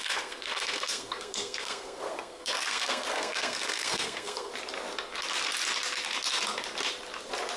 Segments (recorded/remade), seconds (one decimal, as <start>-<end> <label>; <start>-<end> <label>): 0.0-4.5 remade; 4.5-7.6 recorded